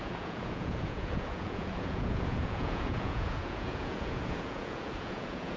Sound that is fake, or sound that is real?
fake